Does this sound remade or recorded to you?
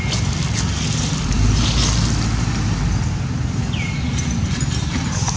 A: recorded